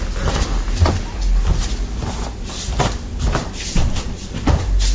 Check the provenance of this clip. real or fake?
real